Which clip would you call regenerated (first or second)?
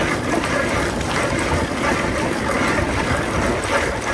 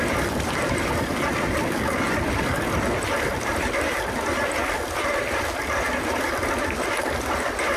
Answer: second